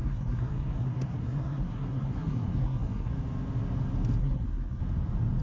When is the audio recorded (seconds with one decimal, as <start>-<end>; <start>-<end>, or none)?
3.1-4.2; 4.8-5.4